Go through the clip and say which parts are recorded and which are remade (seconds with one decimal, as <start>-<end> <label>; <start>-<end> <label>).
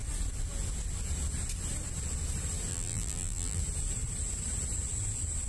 0.0-2.7 recorded; 2.7-3.6 remade; 3.6-5.5 recorded